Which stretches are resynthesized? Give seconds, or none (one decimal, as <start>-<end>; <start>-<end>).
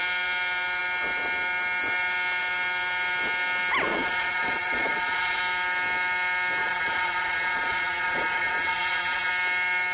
3.9-5.4; 6.6-9.3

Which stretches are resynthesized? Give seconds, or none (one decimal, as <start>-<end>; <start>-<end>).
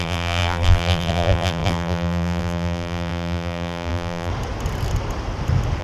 0.0-4.3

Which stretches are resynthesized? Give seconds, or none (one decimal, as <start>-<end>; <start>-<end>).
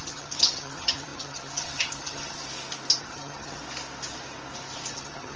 0.0-2.4; 3.0-3.6; 4.9-5.4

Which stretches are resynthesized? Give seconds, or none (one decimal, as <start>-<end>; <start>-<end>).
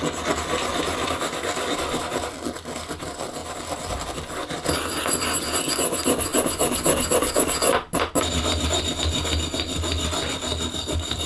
none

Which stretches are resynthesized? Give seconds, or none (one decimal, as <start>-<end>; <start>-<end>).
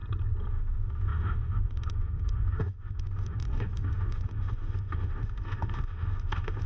0.5-6.7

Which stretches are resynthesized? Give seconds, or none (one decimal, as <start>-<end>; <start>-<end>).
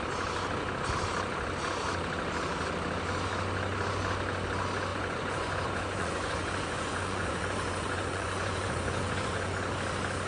4.9-9.5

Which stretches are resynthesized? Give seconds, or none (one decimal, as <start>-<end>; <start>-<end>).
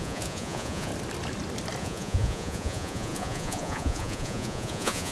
0.0-0.9; 1.8-5.1